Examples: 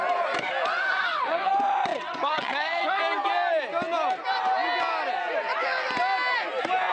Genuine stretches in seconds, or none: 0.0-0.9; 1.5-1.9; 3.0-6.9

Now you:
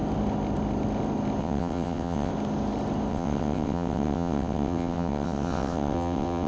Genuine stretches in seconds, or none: 0.0-1.4; 2.3-3.1

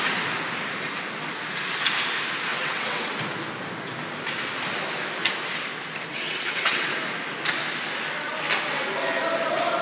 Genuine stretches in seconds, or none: 0.0-2.5; 3.1-6.1; 6.9-9.8

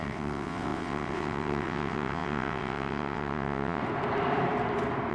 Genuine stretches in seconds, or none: 3.8-5.1